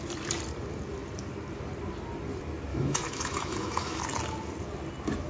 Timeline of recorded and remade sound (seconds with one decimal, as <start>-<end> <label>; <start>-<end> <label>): 0.0-2.7 recorded; 2.7-4.0 remade; 4.0-5.3 recorded